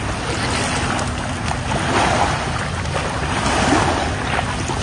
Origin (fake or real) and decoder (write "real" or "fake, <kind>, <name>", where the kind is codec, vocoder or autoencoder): real